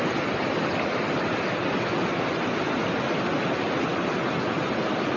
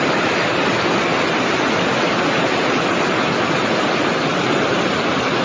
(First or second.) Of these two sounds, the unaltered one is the first